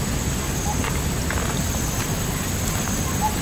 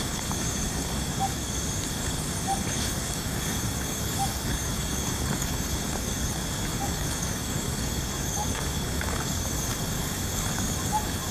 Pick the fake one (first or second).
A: second